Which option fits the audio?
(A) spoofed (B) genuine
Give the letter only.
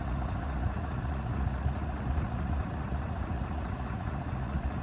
A